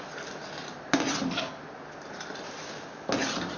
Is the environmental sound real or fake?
real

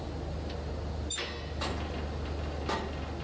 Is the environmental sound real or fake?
real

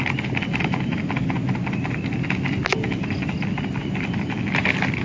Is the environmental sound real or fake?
real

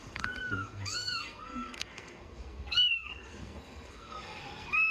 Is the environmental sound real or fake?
fake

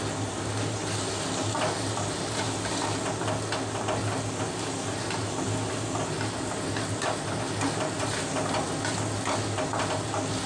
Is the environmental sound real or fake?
real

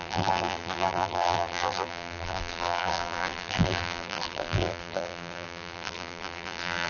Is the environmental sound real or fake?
fake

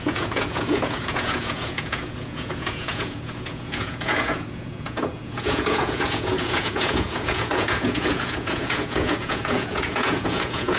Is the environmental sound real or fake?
fake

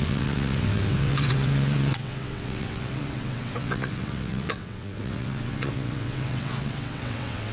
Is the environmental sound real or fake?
fake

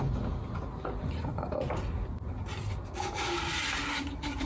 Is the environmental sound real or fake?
real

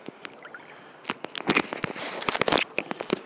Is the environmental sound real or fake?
real